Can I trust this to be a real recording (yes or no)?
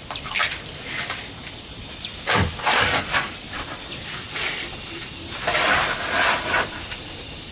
no